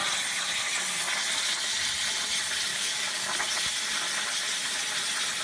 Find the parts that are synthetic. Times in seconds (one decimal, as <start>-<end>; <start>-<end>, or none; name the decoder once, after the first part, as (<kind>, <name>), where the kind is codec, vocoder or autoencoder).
2.7-3.2 (codec, DAC)